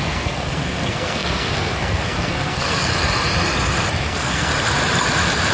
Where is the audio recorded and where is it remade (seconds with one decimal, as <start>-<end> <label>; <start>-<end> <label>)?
0.0-2.9 remade; 2.9-4.0 recorded; 4.0-4.5 remade; 4.5-5.5 recorded